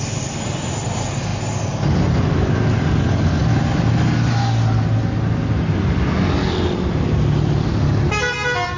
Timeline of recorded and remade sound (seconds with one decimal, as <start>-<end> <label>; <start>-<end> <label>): 0.0-8.8 recorded

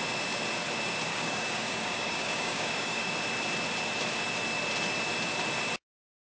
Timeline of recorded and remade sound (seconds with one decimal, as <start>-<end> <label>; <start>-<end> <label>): 0.0-1.1 recorded; 1.1-3.1 remade; 3.1-6.3 recorded